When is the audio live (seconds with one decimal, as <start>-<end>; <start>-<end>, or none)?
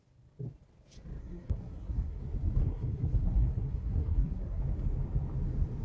0.0-1.2; 2.2-2.6; 4.6-5.8